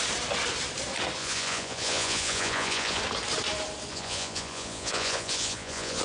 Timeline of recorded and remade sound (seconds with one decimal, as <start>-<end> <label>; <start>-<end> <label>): 0.0-1.2 recorded; 1.2-3.0 remade; 3.0-3.9 recorded; 3.9-6.0 remade